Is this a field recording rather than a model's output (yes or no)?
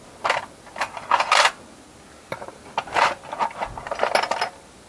yes